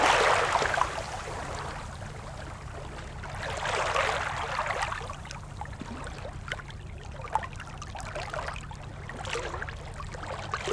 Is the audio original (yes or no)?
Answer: yes